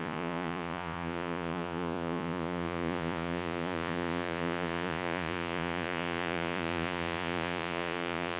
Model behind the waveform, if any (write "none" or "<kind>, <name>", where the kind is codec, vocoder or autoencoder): vocoder, Vocos